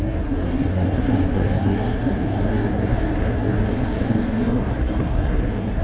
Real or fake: fake